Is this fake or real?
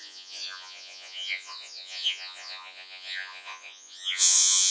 fake